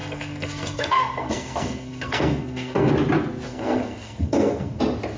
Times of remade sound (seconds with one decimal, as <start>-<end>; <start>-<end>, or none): 0.0-2.9; 3.5-4.8